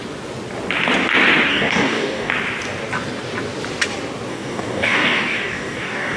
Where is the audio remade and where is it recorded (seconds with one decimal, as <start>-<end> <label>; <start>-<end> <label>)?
0.0-1.5 recorded; 1.5-2.3 remade; 2.3-4.3 recorded; 4.3-6.2 remade

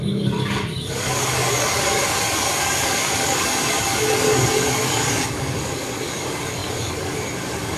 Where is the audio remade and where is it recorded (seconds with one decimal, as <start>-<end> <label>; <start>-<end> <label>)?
0.0-7.8 remade

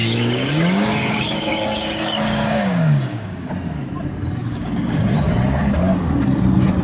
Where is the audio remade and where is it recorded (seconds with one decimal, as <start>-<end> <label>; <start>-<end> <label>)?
0.0-3.5 remade; 3.5-4.4 recorded; 4.4-5.0 remade; 5.0-6.8 recorded

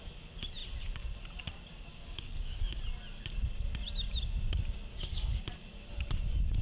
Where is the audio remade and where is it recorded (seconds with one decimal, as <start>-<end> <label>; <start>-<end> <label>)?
0.0-1.9 recorded; 1.9-2.8 remade; 2.8-4.9 recorded; 4.9-5.4 remade; 5.4-6.6 recorded